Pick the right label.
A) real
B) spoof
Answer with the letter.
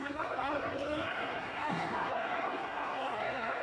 B